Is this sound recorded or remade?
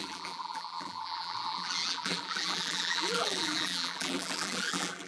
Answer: remade